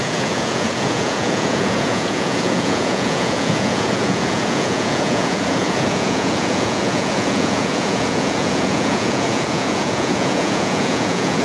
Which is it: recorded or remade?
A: remade